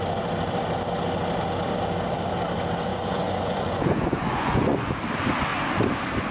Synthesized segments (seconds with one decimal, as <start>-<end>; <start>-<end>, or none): 2.9-4.9